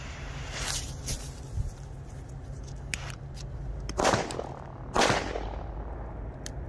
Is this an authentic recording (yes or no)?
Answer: yes